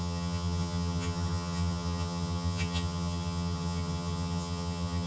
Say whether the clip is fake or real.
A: fake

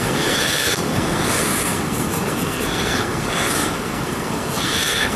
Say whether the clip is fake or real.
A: fake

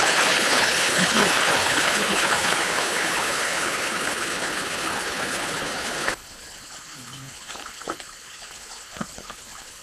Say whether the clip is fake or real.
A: fake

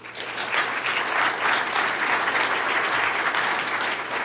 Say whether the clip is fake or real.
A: real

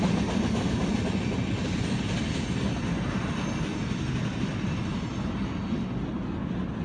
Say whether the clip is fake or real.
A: real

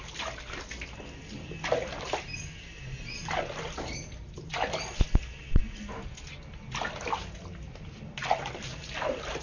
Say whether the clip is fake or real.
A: real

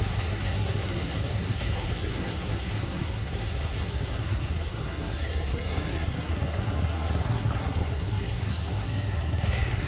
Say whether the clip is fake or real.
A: fake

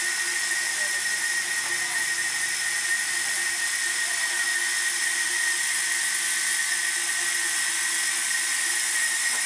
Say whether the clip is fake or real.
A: real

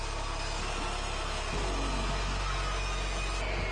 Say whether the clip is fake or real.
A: real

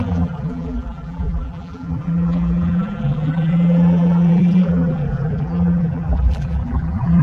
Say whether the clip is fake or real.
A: fake